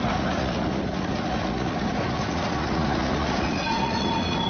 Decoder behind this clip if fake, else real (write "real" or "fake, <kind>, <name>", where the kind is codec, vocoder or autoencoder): fake, vocoder, Vocos